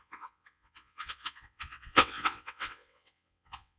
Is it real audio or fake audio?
fake